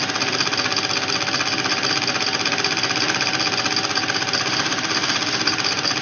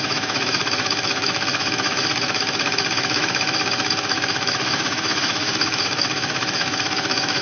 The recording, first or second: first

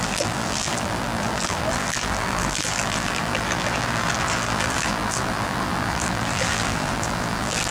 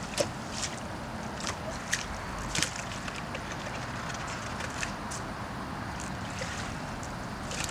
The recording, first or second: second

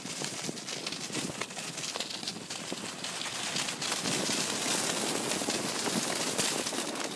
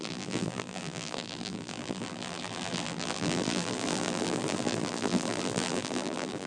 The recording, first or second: first